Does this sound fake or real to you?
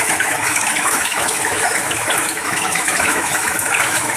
fake